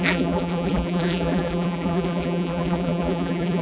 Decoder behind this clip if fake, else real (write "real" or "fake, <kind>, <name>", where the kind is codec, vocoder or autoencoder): fake, vocoder, BigVGAN v2